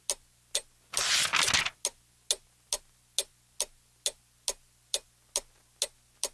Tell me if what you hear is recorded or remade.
recorded